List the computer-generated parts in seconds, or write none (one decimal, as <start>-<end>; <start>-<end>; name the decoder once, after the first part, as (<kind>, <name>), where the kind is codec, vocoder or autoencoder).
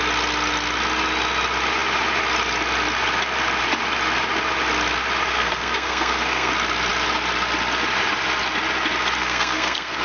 5.3-6.5 (codec, SNAC); 9.2-10.0